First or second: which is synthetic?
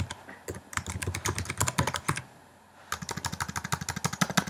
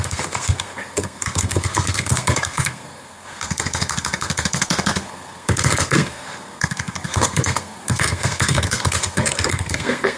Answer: second